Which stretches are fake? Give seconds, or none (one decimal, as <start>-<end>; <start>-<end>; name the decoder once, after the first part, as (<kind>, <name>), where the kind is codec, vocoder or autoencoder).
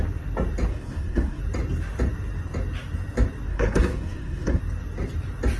0.7-1.4 (codec, SNAC); 3.5-4.6